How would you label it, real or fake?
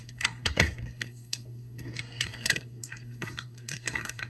fake